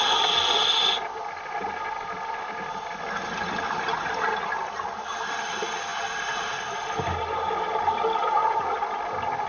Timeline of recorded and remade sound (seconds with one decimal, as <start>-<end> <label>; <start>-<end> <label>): 0.0-9.5 recorded